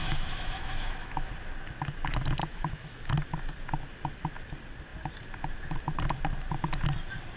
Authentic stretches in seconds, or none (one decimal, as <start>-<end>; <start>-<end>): 1.3-2.4; 3.1-7.4

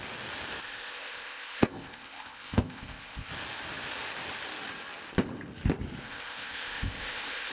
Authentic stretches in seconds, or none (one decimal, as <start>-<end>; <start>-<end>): 0.0-0.6; 3.3-6.0